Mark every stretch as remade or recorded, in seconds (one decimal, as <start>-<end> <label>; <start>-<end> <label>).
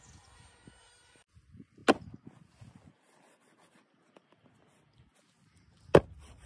0.0-6.5 recorded